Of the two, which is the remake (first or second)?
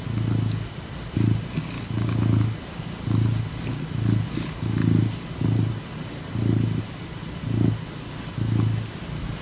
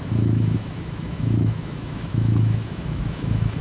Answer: second